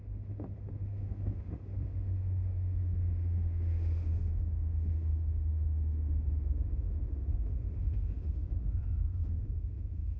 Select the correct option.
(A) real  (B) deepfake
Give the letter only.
B